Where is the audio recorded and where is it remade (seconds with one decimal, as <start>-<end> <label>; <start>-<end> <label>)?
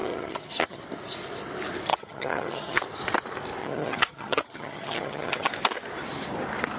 0.0-0.8 remade; 0.8-1.9 recorded; 1.9-2.8 remade; 2.8-3.6 recorded; 3.6-5.5 remade; 5.5-6.8 recorded